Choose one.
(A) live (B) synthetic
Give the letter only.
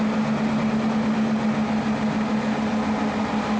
A